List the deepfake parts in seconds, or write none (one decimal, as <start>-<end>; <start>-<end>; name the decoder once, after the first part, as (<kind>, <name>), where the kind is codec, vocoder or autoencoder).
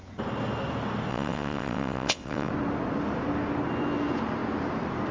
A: 1.1-2.5 (vocoder, WaveNeXt)